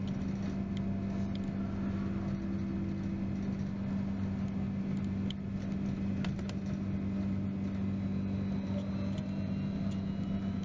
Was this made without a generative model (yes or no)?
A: yes